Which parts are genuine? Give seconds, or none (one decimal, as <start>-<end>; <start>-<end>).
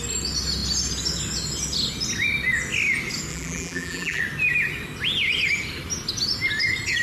0.0-3.3; 4.2-7.0